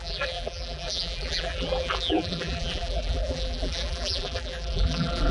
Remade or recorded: remade